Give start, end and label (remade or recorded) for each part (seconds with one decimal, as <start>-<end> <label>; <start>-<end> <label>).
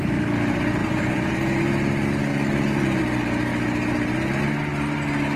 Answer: 0.0-0.8 recorded; 0.8-1.6 remade; 1.6-5.4 recorded